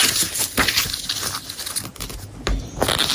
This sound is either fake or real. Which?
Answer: real